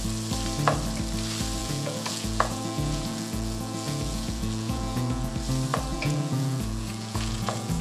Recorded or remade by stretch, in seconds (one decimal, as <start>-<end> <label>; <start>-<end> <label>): 0.0-1.6 recorded; 1.6-5.3 remade; 5.3-5.9 recorded; 5.9-7.8 remade